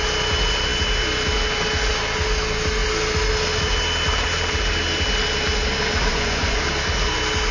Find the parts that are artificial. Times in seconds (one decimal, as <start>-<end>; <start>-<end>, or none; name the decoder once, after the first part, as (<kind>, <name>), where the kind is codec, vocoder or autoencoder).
6.1-6.6 (vocoder, Vocos)